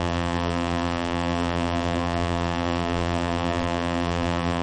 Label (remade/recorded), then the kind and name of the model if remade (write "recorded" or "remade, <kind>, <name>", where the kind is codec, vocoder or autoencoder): remade, vocoder, BigVGAN v2